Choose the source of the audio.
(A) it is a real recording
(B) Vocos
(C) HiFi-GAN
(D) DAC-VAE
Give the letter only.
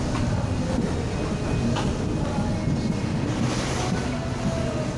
A